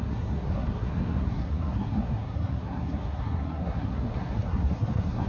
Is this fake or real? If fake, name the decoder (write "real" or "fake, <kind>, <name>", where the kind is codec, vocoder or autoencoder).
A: fake, codec, SNAC